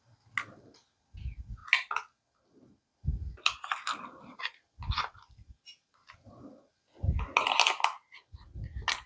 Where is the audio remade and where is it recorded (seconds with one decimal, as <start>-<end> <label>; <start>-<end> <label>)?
0.0-9.1 recorded